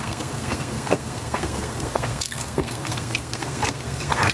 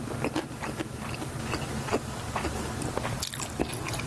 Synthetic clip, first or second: first